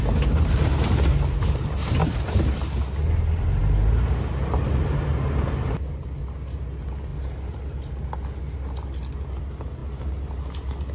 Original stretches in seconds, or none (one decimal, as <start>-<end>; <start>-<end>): 0.0-10.9